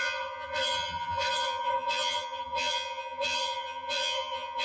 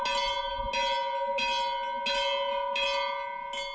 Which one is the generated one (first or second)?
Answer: first